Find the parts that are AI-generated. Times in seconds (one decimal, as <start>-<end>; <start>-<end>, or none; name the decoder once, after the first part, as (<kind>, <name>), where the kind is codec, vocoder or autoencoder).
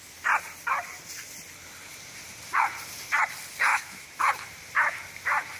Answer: 3.7-4.2 (autoencoder, DAC-VAE)